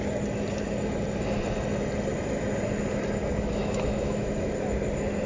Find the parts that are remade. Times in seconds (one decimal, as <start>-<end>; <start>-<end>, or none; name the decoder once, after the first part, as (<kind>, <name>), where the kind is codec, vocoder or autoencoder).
3.2-4.5 (autoencoder, DAC-VAE)